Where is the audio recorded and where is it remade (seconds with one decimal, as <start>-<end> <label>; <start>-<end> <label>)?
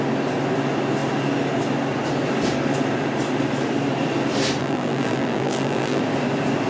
0.0-4.6 recorded; 4.6-6.0 remade; 6.0-6.7 recorded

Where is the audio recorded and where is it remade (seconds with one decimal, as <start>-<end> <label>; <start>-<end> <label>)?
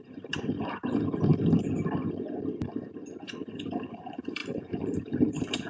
0.0-1.3 remade; 1.3-3.2 recorded; 3.2-5.7 remade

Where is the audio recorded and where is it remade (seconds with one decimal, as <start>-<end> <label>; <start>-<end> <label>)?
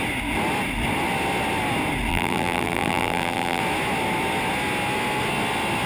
0.0-2.1 recorded; 2.1-3.6 remade; 3.6-5.9 recorded